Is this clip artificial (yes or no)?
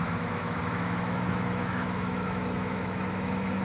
yes